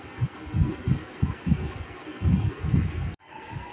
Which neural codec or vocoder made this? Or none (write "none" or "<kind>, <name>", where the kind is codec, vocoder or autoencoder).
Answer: codec, SNAC